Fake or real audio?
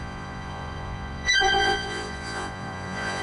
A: fake